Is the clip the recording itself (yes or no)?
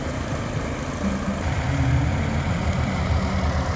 yes